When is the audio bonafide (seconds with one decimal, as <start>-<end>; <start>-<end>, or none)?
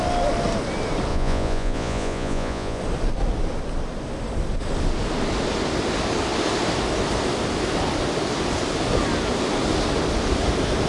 0.0-1.1; 2.8-10.9